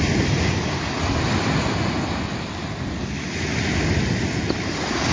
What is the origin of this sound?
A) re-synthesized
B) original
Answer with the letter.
B